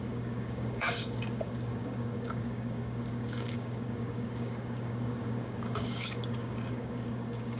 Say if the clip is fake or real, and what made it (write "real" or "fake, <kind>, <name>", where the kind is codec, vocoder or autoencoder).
fake, codec, DAC